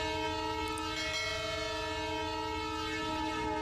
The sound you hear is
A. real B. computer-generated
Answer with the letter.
A